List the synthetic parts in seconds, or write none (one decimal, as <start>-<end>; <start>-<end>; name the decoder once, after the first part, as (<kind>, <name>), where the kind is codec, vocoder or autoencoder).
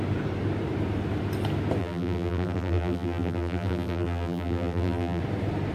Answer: 1.8-5.2 (vocoder, BigVGAN v2)